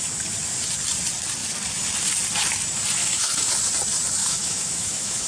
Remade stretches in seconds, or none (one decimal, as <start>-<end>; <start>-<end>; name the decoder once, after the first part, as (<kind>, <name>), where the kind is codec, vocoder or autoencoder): 3.0-3.5 (autoencoder, DAC-VAE); 4.2-5.3